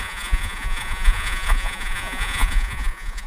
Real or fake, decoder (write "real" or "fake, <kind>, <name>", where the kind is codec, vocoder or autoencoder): fake, vocoder, Vocos